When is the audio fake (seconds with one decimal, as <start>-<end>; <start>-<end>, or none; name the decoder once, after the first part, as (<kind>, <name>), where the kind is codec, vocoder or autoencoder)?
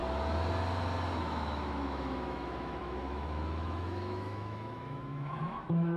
1.2-6.0 (autoencoder, DAC-VAE)